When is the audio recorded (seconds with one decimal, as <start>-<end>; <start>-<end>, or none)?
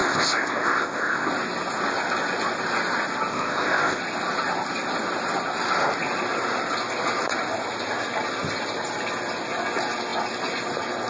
1.3-3.3; 4.0-11.1